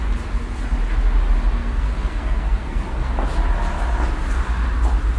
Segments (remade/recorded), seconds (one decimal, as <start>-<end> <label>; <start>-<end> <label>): 0.0-1.6 recorded; 1.6-3.1 remade; 3.1-5.2 recorded